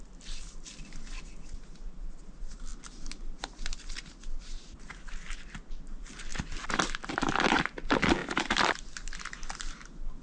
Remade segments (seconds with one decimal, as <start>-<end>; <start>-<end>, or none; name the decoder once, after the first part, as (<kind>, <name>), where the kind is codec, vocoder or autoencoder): none